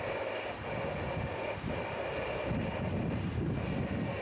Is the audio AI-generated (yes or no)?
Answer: no